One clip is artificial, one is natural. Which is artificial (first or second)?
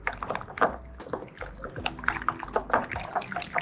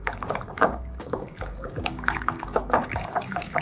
second